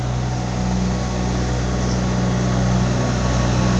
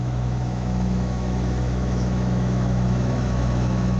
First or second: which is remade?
second